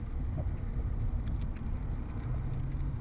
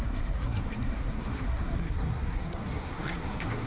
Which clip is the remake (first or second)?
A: second